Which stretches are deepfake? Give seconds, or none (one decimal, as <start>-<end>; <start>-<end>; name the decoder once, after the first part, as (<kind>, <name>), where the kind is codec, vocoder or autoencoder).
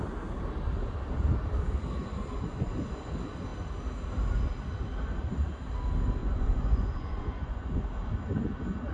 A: 6.2-7.9 (vocoder, Vocos)